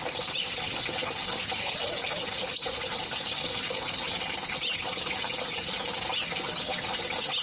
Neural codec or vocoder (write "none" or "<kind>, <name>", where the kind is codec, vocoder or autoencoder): none